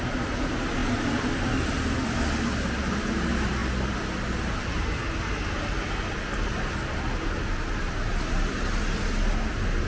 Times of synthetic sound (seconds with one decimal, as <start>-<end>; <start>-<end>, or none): none

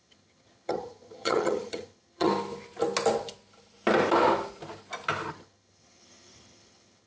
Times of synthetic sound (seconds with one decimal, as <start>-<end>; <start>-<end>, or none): 0.0-2.3; 5.3-7.1